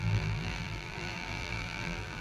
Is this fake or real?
fake